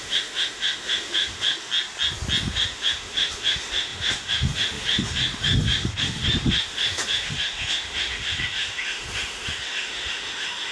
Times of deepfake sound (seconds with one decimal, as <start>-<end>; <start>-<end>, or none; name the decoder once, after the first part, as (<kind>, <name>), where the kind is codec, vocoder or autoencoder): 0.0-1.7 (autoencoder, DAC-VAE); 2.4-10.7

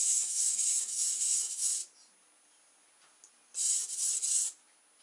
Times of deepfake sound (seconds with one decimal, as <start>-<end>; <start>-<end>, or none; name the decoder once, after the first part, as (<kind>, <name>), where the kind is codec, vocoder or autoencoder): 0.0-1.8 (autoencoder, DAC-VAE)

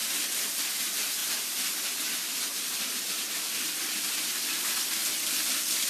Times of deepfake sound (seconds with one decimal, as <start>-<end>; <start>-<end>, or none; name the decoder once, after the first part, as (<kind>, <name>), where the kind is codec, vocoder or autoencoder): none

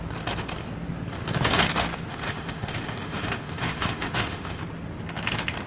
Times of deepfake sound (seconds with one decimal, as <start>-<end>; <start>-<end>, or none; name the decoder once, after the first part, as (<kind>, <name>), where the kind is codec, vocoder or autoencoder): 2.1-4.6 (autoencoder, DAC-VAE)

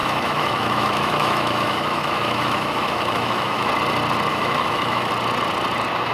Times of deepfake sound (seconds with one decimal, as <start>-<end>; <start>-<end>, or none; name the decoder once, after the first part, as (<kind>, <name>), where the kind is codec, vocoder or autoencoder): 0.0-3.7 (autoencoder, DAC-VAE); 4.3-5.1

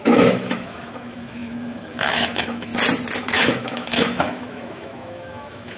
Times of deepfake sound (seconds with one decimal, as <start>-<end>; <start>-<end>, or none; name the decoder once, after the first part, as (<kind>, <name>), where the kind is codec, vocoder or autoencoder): 0.0-2.7 (autoencoder, DAC-VAE); 3.2-5.8

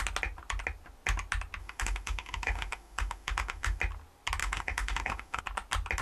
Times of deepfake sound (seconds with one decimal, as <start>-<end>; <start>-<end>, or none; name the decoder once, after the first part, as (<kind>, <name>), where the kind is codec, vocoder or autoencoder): 1.6-3.8 (autoencoder, DAC-VAE); 4.4-5.4